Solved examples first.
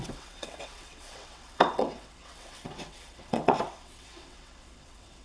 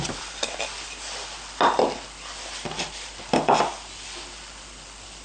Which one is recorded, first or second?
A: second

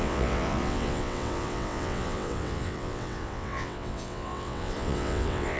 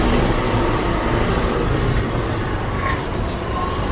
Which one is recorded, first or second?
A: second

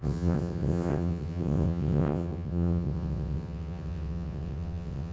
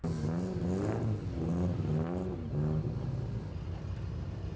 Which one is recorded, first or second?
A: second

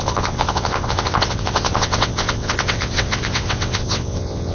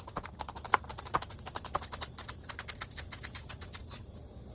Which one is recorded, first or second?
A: second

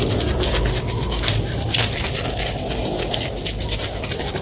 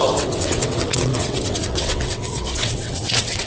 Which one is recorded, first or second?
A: first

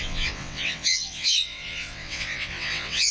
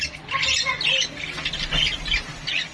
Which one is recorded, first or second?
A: second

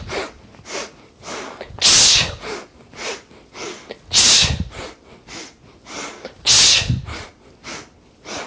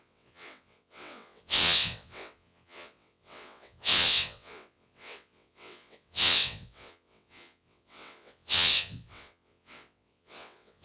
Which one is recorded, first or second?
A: first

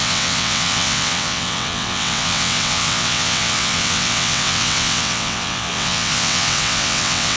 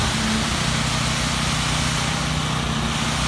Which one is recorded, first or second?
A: second